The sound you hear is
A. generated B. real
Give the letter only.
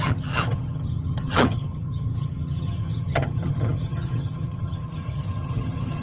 A